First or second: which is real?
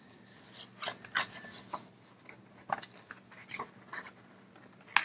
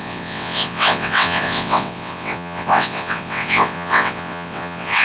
first